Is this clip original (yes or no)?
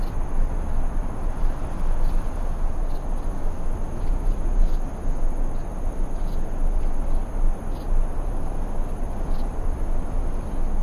yes